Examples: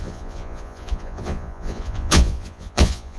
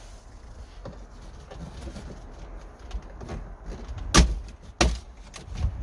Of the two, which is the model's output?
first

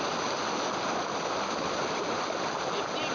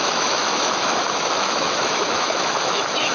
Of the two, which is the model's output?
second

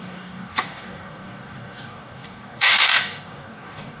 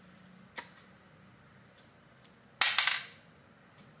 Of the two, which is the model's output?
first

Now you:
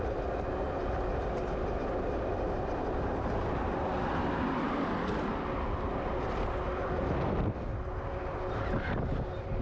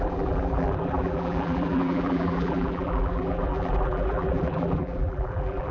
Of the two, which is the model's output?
second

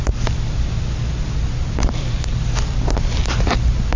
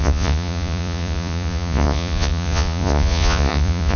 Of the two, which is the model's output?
second